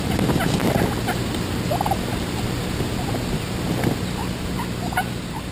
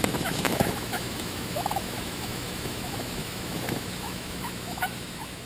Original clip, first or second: first